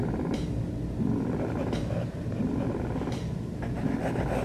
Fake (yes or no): no